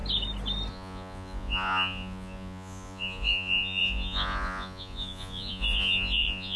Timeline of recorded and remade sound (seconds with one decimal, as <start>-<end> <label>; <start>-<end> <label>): 0.0-0.7 recorded; 0.7-6.6 remade